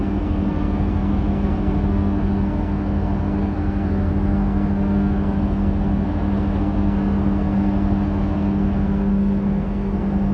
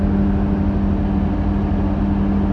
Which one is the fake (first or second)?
first